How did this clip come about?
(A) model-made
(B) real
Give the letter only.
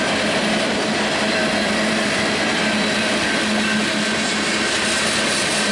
B